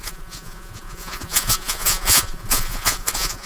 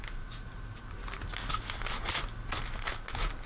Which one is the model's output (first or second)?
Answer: first